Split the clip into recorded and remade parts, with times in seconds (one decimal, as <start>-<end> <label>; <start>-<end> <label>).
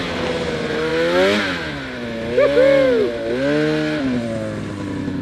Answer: 0.0-5.2 recorded